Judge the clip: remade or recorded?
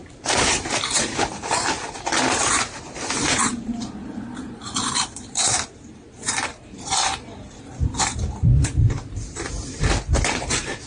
remade